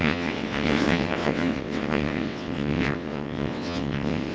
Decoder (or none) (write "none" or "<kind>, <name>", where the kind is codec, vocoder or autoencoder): vocoder, WaveNeXt